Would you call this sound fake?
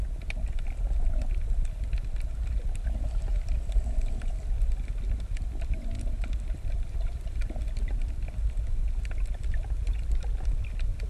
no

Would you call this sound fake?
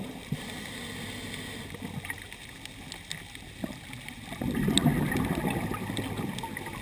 no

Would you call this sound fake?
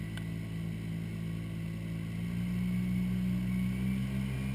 no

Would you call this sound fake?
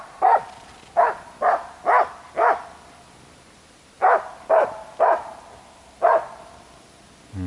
no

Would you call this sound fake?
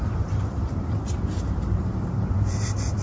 yes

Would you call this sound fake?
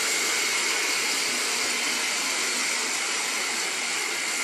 no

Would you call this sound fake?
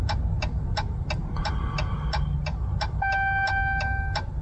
no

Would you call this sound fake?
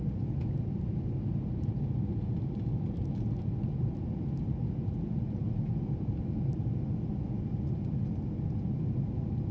no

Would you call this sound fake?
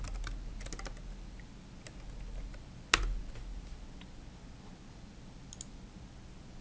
no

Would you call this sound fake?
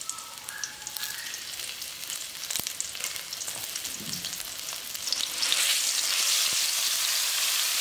no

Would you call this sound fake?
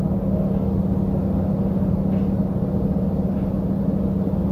no